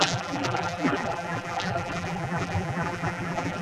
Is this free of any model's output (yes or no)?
no